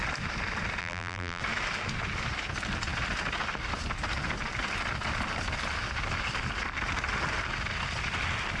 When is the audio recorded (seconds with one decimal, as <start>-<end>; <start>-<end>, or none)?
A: 0.0-0.8; 1.4-8.6